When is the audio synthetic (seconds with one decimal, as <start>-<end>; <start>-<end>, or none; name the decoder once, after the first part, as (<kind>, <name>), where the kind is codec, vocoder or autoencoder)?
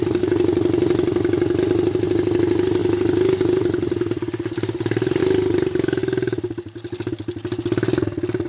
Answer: none